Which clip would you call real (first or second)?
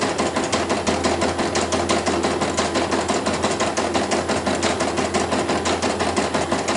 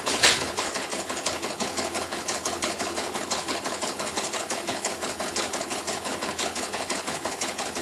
first